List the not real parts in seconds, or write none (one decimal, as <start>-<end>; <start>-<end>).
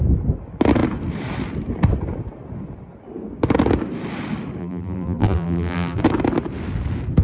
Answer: 4.6-6.0